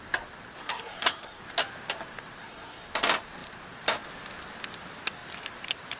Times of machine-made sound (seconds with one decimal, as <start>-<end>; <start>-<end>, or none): 0.6-1.4; 2.4-2.9